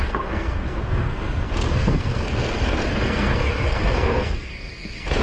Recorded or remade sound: remade